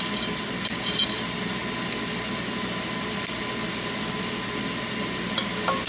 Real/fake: real